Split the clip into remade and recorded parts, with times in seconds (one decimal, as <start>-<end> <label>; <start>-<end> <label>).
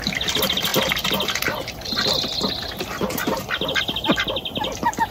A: 0.0-5.1 recorded